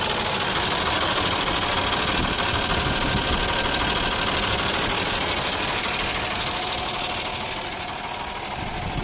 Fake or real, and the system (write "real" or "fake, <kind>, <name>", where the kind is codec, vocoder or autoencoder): real